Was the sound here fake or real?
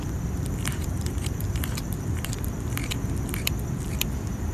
fake